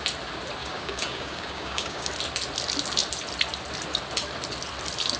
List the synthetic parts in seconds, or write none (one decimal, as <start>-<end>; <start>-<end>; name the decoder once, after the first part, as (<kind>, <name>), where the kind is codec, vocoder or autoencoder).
0.6-2.1 (codec, DAC)